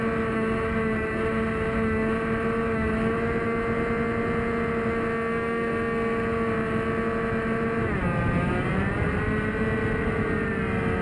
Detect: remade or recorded recorded